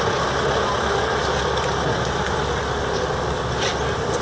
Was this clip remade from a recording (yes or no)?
no